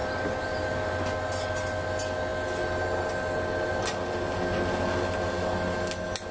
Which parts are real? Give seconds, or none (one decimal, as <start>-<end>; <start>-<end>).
0.0-6.3